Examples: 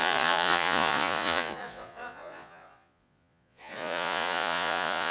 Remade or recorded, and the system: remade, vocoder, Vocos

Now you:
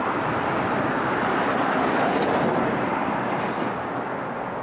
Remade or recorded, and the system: recorded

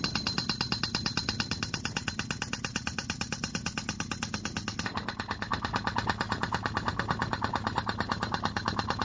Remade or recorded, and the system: recorded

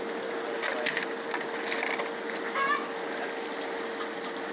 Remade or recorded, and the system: recorded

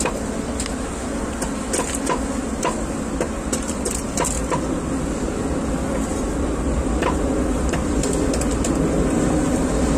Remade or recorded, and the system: recorded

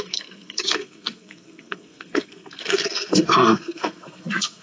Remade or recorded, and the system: remade, codec, SNAC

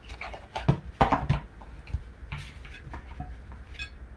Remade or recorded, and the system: recorded